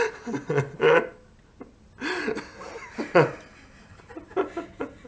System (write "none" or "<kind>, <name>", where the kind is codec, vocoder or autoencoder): none